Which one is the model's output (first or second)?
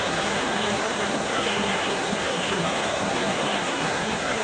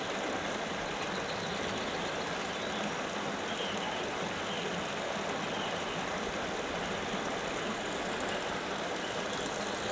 first